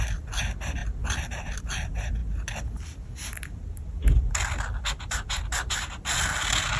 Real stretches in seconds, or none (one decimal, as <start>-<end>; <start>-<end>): 0.0-6.8